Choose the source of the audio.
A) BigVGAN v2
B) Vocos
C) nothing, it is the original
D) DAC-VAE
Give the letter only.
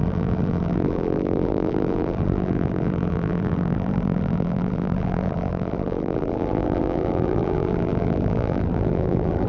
A